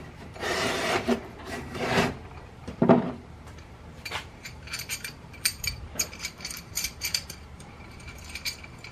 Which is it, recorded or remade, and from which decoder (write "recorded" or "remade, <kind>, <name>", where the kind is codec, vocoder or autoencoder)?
remade, vocoder, BigVGAN v2